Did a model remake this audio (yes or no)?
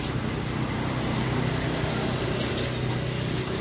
no